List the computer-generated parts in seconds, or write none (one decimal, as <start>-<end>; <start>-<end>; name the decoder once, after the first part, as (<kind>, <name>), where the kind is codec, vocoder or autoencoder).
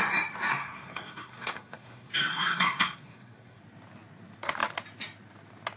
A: 0.5-3.6 (codec, SNAC)